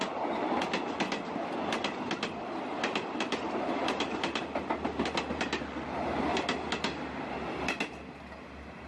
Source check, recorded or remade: recorded